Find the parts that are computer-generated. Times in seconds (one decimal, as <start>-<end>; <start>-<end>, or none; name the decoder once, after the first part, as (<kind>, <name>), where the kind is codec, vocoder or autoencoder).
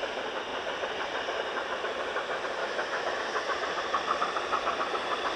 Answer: 2.6-3.2 (autoencoder, DAC-VAE)